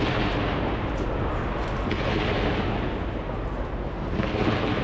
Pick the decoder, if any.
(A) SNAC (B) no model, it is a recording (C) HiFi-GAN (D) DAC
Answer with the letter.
B